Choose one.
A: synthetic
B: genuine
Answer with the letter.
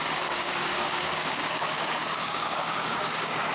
A